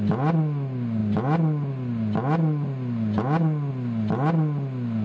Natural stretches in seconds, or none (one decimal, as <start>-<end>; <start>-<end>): 0.0-5.0